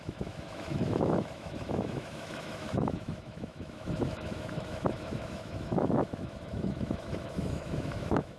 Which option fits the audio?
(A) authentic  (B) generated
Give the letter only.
B